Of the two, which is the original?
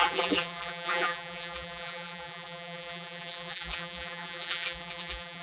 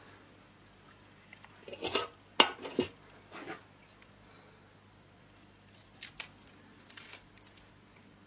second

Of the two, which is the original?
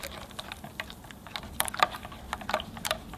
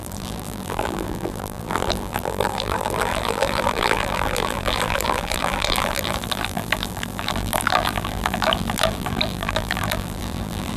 first